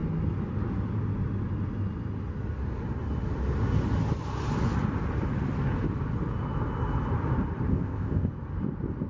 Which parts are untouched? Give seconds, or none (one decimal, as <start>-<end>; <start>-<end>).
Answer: 0.0-7.7; 8.3-9.1

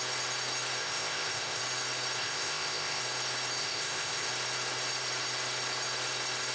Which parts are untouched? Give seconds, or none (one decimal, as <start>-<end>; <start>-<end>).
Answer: 0.0-0.8; 1.6-2.2; 3.0-3.6; 4.3-6.5

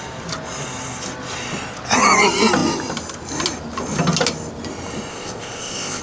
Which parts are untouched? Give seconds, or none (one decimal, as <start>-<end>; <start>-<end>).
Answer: 0.0-5.1

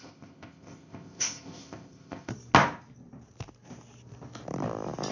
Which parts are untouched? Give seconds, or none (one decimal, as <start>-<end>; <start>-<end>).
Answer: 2.3-5.1

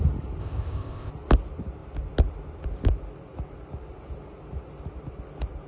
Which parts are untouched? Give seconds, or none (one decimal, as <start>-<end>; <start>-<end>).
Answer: 0.0-0.4; 1.1-5.7

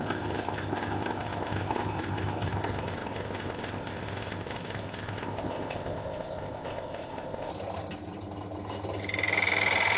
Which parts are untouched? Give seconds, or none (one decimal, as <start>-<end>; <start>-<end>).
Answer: 7.5-10.0

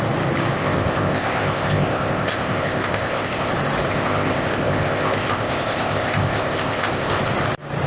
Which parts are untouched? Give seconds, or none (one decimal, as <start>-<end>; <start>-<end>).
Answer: 0.0-0.6; 3.5-3.9; 7.2-7.9